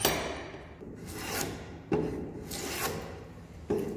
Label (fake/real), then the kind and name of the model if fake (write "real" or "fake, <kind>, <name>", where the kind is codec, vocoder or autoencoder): real